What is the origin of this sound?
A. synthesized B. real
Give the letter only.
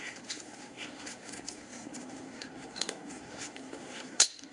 A